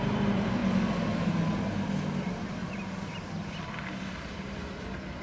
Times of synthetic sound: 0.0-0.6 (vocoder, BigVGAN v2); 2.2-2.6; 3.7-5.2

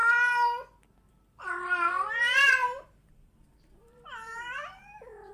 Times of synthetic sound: 1.1-5.3 (vocoder, BigVGAN v2)

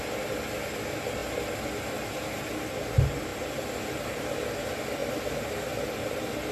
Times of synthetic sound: none

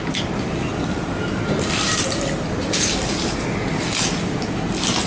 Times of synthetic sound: none

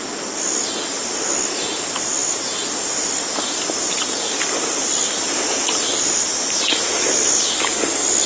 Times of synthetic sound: none

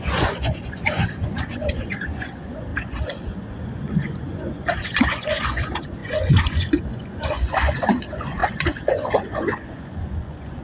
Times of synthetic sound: 0.0-10.6 (vocoder, Vocos)

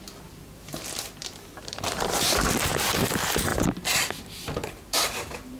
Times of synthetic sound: 0.0-3.5 (vocoder, BigVGAN v2)

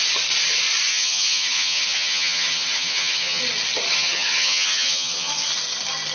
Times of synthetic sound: 0.9-3.4 (vocoder, HiFi-GAN); 3.9-5.3